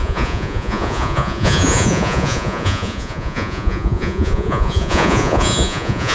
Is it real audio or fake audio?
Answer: fake